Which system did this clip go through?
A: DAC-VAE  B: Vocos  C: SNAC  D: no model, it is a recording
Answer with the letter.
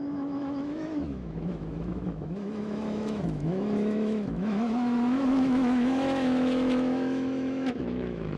A